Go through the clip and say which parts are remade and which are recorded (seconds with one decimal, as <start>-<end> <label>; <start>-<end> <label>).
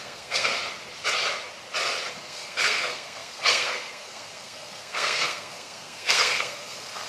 0.0-0.5 remade; 0.5-2.1 recorded; 2.1-7.1 remade